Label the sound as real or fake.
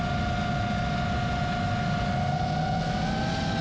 real